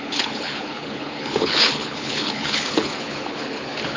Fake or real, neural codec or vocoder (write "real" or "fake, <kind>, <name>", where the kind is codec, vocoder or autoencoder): fake, codec, HILCodec